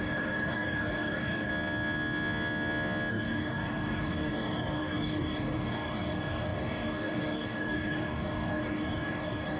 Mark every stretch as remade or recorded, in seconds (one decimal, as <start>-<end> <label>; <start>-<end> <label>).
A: 0.0-1.5 remade; 1.5-3.1 recorded; 3.1-9.6 remade